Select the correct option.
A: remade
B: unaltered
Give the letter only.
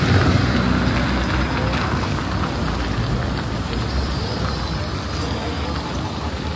B